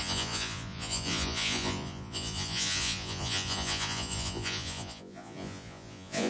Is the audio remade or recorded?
remade